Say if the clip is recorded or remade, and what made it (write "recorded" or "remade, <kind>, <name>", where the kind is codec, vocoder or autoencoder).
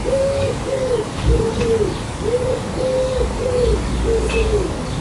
remade, codec, DAC